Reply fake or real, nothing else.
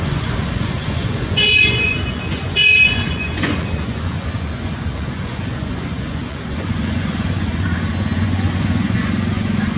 fake